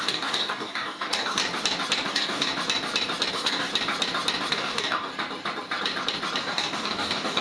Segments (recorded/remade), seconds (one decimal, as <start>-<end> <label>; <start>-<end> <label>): 0.0-1.4 remade; 1.4-2.1 recorded; 2.1-2.5 remade; 2.5-3.3 recorded; 3.3-3.7 remade; 3.7-4.5 recorded; 4.5-5.1 remade; 5.1-6.4 recorded; 6.4-7.4 remade